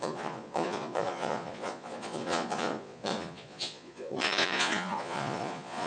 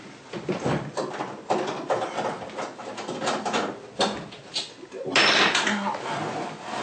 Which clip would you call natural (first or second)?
second